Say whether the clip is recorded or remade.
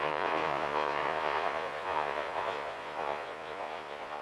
remade